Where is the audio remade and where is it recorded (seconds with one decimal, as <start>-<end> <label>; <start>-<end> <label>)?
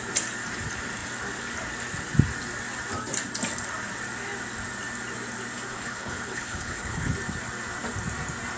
0.0-5.7 recorded; 5.7-7.1 remade; 7.1-8.6 recorded